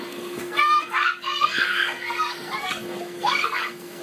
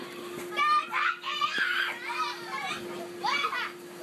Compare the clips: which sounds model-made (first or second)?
first